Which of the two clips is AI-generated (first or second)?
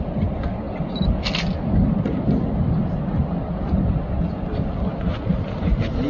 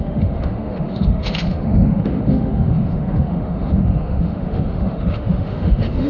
second